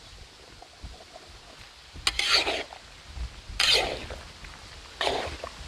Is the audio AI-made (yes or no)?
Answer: no